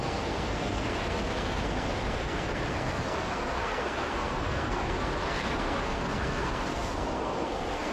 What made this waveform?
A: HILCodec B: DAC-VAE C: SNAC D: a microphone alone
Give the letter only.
C